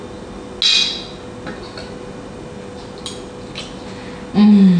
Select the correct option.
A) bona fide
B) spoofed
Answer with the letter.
A